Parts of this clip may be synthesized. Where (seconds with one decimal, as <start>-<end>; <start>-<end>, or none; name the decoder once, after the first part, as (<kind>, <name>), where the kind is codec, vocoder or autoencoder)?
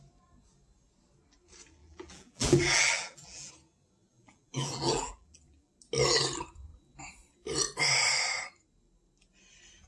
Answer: 1.8-3.5 (vocoder, BigVGAN v2); 4.1-5.7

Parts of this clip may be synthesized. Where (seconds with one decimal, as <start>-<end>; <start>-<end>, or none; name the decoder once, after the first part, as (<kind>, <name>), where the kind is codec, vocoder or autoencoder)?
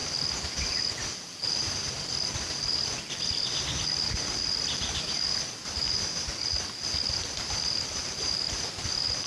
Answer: none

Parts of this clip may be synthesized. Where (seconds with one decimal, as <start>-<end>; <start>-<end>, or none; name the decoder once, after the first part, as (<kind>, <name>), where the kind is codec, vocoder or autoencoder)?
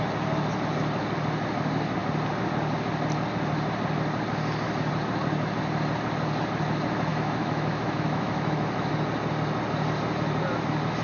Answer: 7.1-8.9 (autoencoder, DAC-VAE)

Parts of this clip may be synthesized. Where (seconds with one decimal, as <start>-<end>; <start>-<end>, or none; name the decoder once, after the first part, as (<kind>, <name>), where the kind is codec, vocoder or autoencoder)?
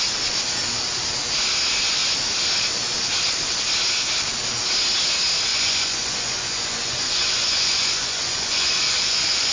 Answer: 5.5-9.5 (vocoder, Vocos)